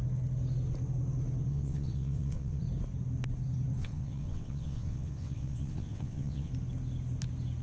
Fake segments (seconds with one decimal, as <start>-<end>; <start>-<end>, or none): 1.5-2.6; 3.8-6.5